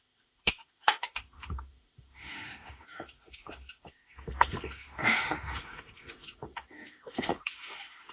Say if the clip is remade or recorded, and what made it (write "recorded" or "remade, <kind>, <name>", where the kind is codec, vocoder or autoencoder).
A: remade, autoencoder, DAC-VAE